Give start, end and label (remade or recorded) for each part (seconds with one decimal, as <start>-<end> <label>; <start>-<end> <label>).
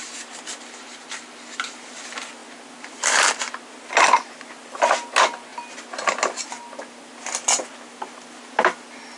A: 0.0-9.2 recorded